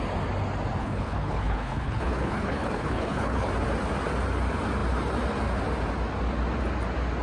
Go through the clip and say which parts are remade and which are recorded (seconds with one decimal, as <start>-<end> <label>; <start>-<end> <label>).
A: 0.0-0.8 recorded; 0.8-3.5 remade; 3.5-7.2 recorded